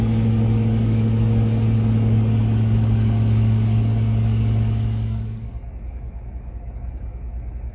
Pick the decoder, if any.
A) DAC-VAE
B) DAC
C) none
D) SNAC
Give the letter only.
B